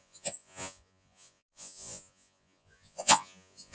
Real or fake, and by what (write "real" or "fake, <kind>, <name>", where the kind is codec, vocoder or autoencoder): fake, vocoder, Vocos